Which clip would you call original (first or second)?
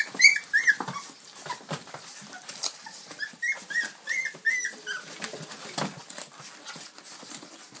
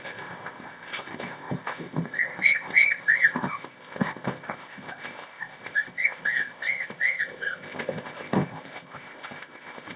first